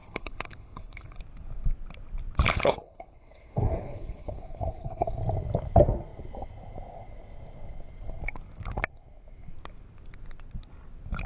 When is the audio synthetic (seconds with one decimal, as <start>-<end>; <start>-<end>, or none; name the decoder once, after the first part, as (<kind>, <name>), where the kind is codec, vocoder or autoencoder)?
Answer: 0.0-1.2 (codec, HILCodec); 2.5-5.2